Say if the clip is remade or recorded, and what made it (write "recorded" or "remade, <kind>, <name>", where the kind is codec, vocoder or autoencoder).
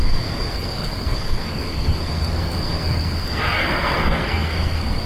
remade, codec, SNAC